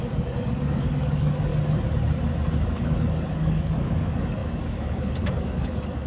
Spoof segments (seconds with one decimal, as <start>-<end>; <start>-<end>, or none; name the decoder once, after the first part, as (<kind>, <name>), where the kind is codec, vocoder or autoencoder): 0.0-1.5 (codec, DAC); 2.7-6.1